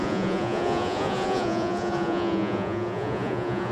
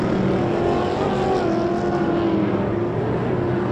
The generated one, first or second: first